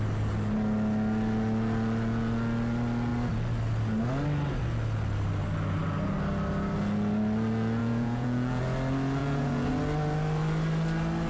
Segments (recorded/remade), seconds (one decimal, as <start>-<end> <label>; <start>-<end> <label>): 0.0-7.8 recorded; 7.8-8.6 remade; 8.6-9.2 recorded; 9.2-9.7 remade; 9.7-11.3 recorded